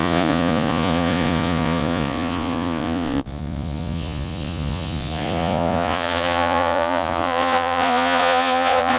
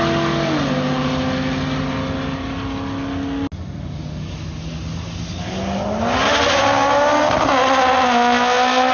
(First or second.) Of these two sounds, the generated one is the first